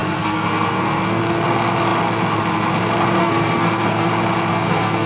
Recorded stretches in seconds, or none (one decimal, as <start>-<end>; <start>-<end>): 1.2-3.2; 4.1-4.5